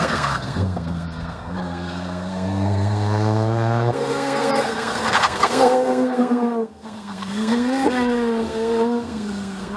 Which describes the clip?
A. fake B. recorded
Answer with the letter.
A